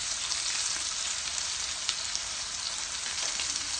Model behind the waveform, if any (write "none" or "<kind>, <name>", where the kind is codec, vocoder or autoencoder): none